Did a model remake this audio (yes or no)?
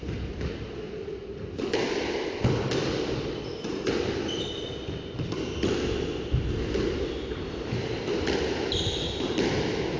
no